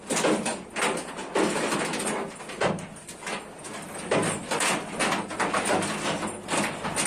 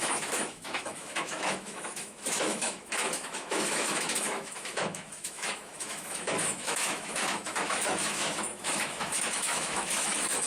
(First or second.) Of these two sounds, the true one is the first